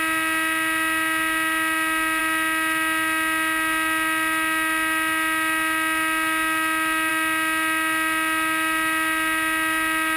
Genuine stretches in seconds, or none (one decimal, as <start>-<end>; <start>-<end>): 0.0-10.2